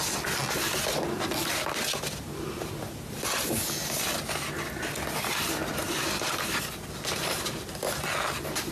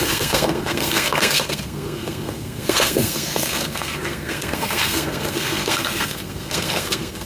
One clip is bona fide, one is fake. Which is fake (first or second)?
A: second